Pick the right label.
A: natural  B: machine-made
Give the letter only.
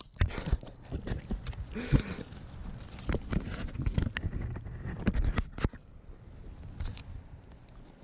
A